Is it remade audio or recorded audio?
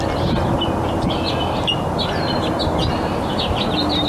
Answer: recorded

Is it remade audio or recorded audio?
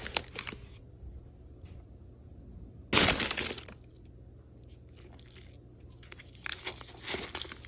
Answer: recorded